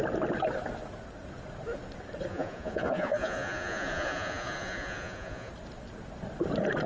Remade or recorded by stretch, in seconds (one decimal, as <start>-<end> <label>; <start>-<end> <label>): 0.0-2.3 recorded; 2.3-5.5 remade; 5.5-6.9 recorded